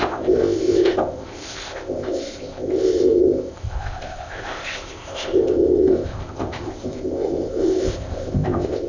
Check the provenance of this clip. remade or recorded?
remade